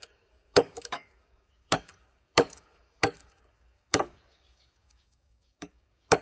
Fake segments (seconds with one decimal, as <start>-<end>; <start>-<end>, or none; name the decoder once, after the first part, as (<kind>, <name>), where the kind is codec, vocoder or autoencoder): 0.0-6.2 (codec, DAC)